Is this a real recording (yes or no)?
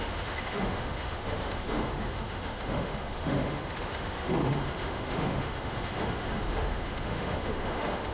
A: no